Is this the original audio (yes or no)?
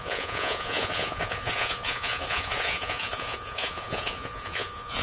no